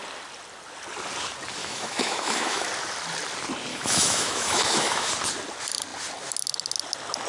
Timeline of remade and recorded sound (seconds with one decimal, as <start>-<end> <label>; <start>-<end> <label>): 0.0-1.6 recorded; 1.6-2.7 remade; 2.7-3.7 recorded; 3.7-5.1 remade; 5.1-7.3 recorded